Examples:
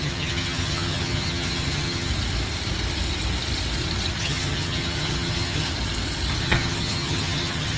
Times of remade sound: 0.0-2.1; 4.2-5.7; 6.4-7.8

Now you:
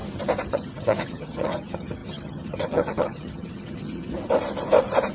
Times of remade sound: 0.5-4.1

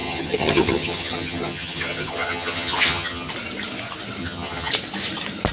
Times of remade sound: 0.0-3.3; 4.2-4.7